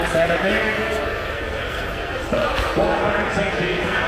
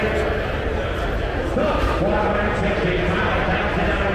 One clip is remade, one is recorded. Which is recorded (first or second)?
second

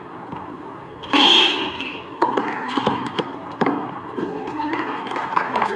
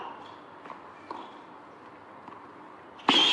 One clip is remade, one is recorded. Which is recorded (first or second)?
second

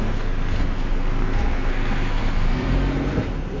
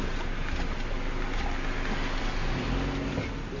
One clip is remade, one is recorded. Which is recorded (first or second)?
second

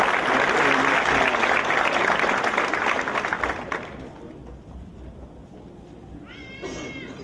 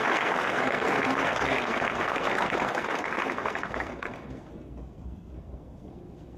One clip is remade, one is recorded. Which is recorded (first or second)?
first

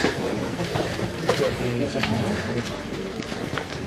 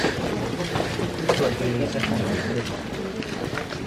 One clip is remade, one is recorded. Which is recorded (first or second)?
second